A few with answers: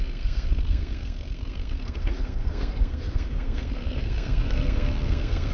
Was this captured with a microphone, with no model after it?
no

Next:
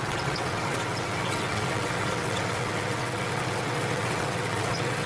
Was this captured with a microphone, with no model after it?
no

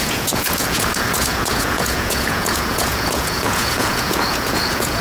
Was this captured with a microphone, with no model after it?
no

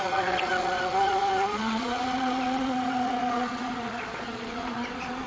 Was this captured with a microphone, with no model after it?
no